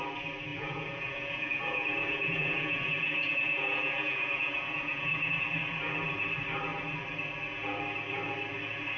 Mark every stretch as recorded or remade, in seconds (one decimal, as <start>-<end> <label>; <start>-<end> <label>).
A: 0.0-0.5 recorded; 0.5-5.4 remade; 5.4-9.0 recorded